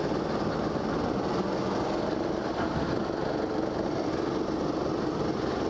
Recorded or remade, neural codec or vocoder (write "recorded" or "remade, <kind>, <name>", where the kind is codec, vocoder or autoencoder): recorded